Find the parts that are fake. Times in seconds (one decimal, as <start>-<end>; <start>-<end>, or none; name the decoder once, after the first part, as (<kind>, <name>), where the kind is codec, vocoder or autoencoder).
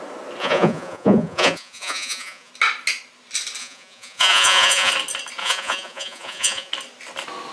0.4-2.5 (vocoder, Vocos); 3.6-4.9; 5.4-6.7